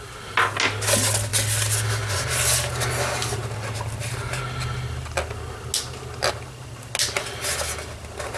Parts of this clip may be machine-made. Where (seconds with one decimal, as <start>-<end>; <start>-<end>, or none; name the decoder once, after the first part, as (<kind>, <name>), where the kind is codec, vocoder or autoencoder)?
none

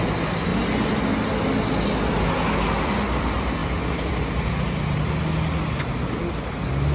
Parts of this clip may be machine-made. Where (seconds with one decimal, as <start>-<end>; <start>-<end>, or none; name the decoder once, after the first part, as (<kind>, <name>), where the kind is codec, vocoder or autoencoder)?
none

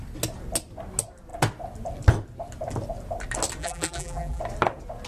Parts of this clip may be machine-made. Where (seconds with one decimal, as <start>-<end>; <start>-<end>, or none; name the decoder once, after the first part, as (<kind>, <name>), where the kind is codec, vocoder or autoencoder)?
3.6-4.4 (vocoder, BigVGAN v2)

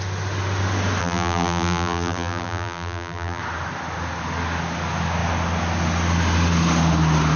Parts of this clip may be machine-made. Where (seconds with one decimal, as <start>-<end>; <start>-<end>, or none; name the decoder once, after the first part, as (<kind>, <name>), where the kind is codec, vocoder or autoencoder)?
1.0-3.4 (vocoder, BigVGAN v2)

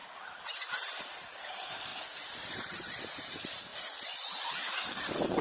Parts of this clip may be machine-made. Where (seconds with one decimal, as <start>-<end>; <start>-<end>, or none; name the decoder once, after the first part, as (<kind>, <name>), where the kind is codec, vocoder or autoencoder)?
0.0-1.9 (vocoder, BigVGAN v2); 2.6-5.4

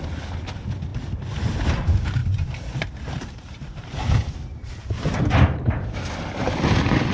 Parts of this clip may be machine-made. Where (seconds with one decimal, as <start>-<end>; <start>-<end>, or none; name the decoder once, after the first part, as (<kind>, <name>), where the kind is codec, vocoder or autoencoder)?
2.2-5.2 (vocoder, BigVGAN v2)